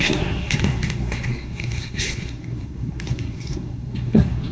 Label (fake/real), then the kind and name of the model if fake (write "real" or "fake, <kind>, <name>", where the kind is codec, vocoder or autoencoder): fake, codec, SNAC